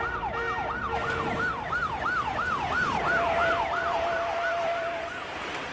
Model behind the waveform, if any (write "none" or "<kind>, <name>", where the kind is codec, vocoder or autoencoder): none